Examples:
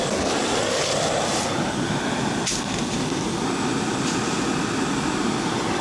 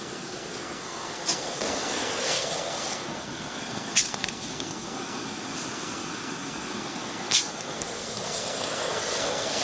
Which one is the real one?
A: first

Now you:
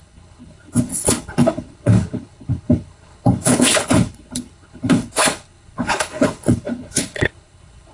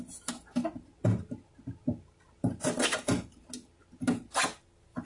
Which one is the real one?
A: second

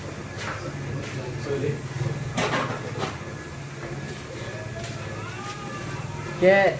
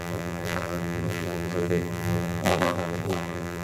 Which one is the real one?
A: first